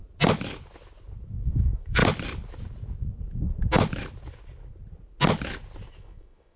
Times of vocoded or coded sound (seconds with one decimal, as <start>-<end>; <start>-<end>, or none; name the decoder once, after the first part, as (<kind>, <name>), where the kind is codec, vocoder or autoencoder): 1.4-2.0 (autoencoder, DAC-VAE); 5.9-6.6